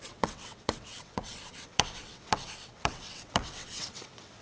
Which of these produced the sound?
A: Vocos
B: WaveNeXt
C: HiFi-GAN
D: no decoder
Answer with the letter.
B